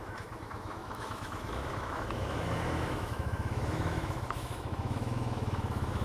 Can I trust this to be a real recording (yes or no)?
no